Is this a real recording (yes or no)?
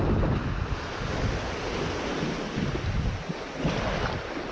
yes